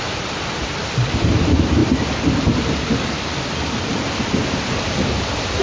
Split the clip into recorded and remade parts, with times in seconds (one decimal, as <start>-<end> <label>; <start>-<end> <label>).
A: 0.0-5.6 recorded